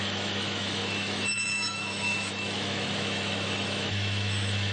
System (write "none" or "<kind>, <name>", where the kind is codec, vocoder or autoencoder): autoencoder, DAC-VAE